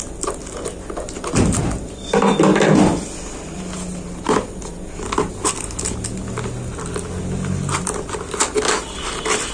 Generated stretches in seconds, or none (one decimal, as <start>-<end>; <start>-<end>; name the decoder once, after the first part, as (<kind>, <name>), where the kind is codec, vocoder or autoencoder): none